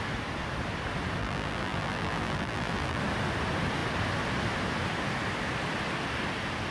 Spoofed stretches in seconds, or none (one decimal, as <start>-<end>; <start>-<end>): 1.2-3.0